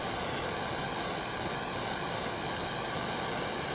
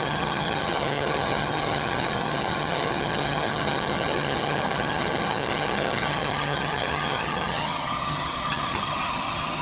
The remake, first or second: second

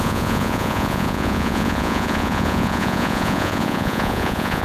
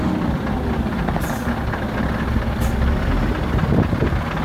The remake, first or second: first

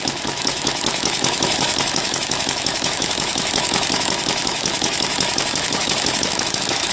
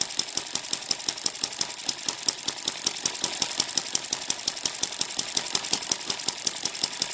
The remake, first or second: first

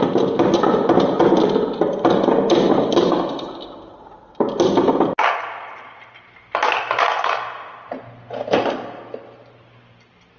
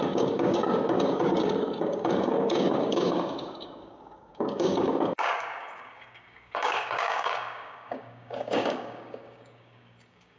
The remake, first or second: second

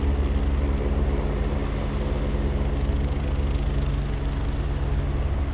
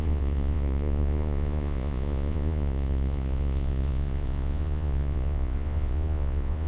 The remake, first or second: second